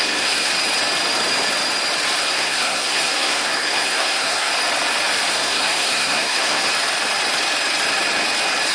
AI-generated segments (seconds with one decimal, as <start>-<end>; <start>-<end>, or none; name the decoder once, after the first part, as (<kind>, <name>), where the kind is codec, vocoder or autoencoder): 0.0-0.5 (codec, SNAC); 2.2-4.5; 5.3-6.7